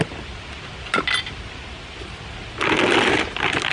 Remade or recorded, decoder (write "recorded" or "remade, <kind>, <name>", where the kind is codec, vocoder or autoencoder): recorded